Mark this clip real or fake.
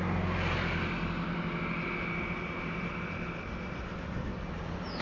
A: real